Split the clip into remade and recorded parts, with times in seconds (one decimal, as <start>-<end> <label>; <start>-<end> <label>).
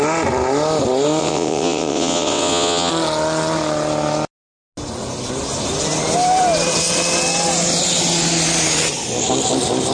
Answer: 0.0-1.2 recorded; 1.2-2.9 remade; 2.9-9.9 recorded